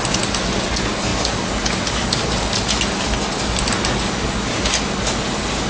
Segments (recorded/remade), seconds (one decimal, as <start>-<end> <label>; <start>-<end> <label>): 0.0-5.7 recorded